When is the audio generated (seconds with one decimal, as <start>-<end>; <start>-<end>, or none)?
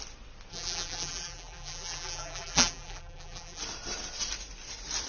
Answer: 0.5-3.6